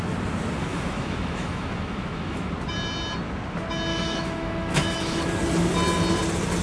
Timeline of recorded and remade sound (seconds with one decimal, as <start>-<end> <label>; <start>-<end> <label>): 0.0-0.6 recorded; 0.6-2.5 remade; 2.5-3.9 recorded; 3.9-5.3 remade; 5.3-6.6 recorded